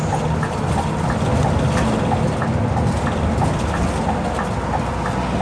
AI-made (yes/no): no